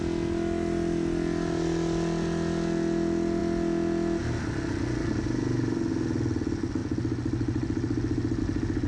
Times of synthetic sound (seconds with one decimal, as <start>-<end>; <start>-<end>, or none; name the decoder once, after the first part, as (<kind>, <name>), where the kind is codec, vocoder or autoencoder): none